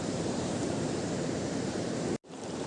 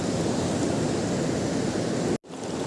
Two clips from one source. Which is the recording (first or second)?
second